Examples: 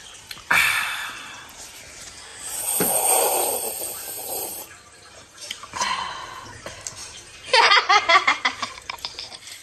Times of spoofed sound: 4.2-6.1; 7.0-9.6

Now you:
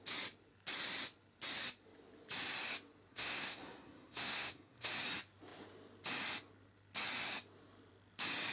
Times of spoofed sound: 3.1-4.9

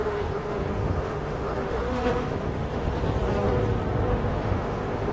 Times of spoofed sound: 0.0-2.9; 4.1-5.1